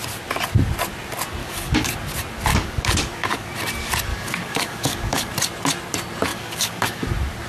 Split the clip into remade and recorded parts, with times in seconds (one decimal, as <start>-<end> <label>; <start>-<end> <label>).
0.0-1.4 recorded; 1.4-1.9 remade; 1.9-2.5 recorded; 2.5-3.5 remade; 3.5-4.1 recorded; 4.1-5.3 remade; 5.3-6.3 recorded; 6.3-7.0 remade; 7.0-7.5 recorded